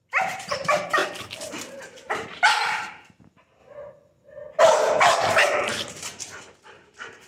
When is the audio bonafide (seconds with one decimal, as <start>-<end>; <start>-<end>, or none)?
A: 1.0-1.5; 3.6-4.6